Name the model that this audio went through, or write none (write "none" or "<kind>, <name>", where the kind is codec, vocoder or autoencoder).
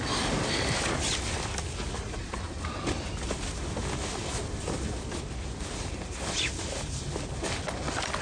none